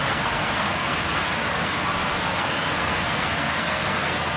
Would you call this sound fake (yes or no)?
yes